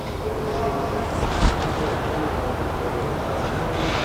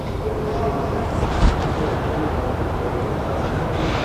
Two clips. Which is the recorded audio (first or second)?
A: first